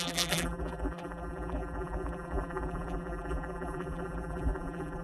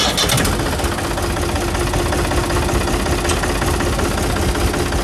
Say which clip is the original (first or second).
second